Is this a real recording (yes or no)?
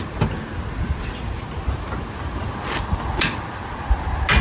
yes